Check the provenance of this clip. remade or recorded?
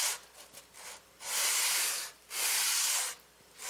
recorded